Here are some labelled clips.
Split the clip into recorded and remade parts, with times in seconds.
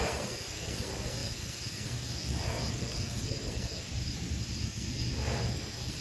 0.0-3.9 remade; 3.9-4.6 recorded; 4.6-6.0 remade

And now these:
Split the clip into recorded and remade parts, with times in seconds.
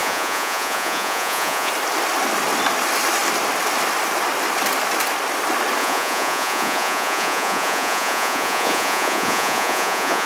0.0-1.7 remade; 1.7-5.8 recorded; 5.8-10.3 remade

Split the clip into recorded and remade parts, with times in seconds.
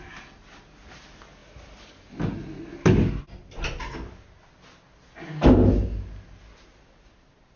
0.0-7.6 recorded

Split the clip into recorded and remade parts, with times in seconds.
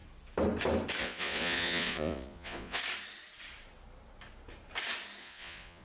0.0-1.0 recorded; 1.0-2.8 remade; 2.8-5.2 recorded; 5.2-5.8 remade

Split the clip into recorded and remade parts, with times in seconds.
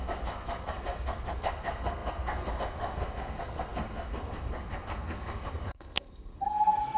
0.0-7.0 remade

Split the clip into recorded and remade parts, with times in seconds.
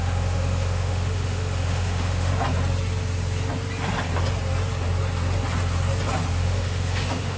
0.0-2.3 remade; 2.3-6.3 recorded; 6.3-7.4 remade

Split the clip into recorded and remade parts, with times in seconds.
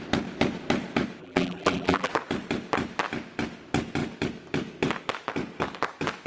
0.0-1.2 recorded; 1.2-2.1 remade; 2.1-6.3 recorded